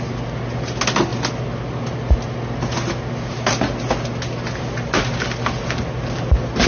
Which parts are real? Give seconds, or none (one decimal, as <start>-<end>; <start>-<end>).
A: 0.0-6.7